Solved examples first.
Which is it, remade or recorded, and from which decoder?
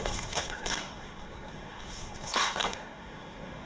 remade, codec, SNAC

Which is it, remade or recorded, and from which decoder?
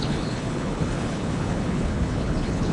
remade, codec, HILCodec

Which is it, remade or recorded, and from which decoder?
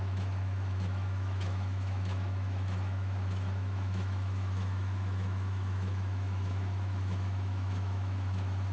remade, autoencoder, DAC-VAE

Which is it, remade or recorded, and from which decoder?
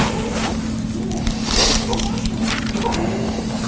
recorded